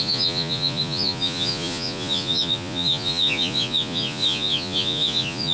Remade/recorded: remade